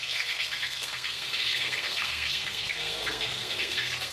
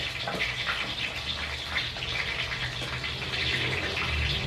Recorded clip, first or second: second